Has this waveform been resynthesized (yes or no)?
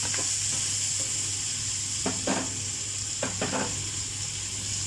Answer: no